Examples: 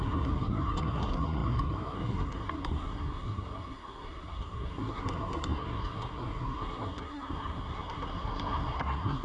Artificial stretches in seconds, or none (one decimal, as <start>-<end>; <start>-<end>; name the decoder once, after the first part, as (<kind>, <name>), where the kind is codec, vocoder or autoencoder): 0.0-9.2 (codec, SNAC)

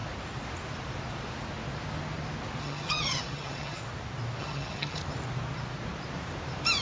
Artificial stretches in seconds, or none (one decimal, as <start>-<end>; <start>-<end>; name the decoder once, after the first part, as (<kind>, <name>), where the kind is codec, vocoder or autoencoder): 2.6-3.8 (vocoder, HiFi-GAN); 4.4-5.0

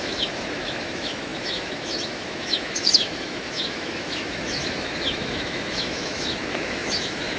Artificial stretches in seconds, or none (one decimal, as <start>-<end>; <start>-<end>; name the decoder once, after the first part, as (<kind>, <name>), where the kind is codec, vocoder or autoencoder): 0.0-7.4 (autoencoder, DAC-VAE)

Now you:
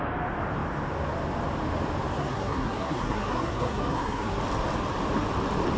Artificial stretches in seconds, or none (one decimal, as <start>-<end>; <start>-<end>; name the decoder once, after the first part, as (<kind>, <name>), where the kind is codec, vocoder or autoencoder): 2.1-4.4 (codec, SNAC)

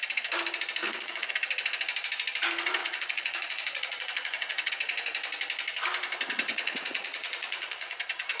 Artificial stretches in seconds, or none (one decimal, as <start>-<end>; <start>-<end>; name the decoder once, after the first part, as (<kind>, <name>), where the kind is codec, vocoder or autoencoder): 0.8-1.3 (vocoder, Vocos); 2.8-4.7; 6.5-8.0

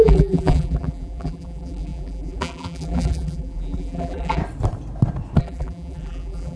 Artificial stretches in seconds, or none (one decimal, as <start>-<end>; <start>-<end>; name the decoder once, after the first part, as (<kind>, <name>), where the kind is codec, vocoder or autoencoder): 0.0-4.4 (vocoder, BigVGAN v2); 5.4-6.6

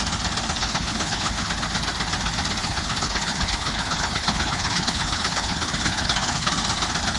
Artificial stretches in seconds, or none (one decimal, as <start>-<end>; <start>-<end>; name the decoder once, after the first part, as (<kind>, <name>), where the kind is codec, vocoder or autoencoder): 0.6-1.5 (codec, HILCodec); 2.6-6.5